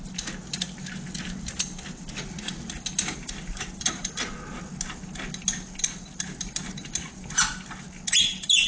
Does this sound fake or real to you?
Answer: real